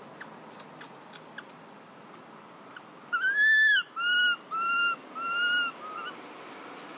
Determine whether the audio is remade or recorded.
recorded